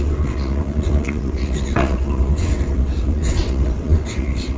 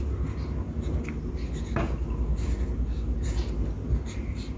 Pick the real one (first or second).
second